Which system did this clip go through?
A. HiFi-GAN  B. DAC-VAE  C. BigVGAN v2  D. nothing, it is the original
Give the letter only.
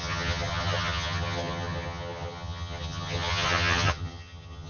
A